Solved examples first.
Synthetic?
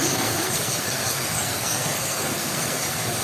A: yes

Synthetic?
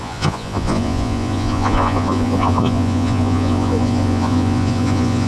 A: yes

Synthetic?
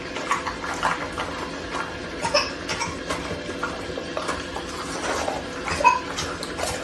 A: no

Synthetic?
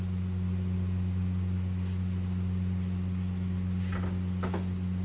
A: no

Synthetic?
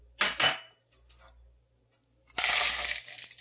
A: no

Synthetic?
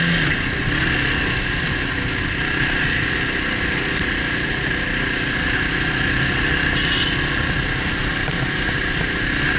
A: no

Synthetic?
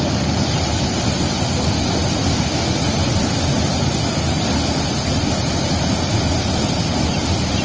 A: no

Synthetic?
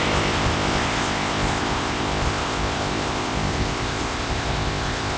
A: yes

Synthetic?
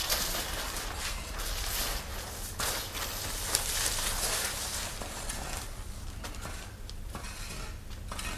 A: no